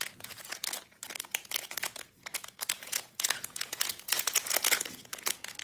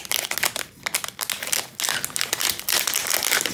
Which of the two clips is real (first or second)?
second